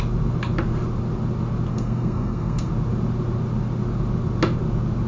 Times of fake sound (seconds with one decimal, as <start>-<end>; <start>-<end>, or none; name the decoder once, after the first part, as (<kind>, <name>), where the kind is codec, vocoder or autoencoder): 1.7-2.7 (codec, SNAC)